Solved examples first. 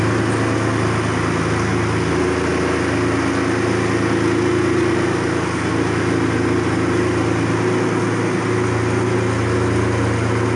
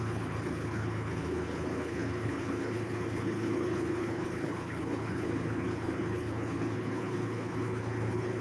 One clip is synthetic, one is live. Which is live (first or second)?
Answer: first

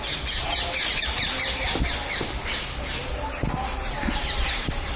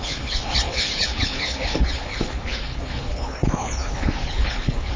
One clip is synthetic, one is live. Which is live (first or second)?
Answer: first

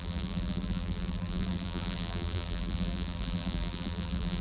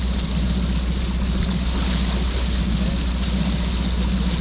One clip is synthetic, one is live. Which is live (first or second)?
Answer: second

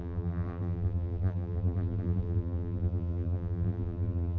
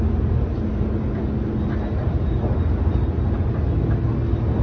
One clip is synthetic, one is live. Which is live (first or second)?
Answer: second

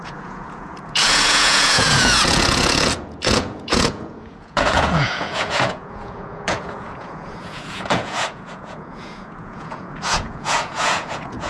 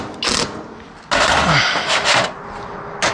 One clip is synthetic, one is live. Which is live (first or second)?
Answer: second